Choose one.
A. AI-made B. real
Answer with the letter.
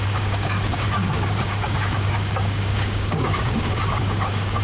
A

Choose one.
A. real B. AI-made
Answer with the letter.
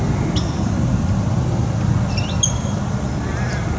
A